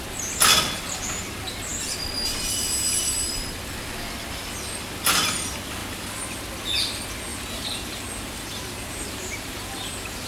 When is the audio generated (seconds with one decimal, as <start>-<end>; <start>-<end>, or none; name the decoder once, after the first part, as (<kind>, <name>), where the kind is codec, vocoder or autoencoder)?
5.8-6.4 (vocoder, BigVGAN v2); 7.3-10.3